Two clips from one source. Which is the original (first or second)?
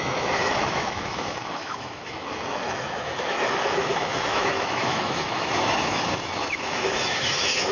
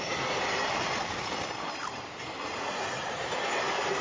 second